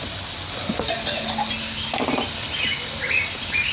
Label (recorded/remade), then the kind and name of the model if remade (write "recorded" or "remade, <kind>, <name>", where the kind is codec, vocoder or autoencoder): recorded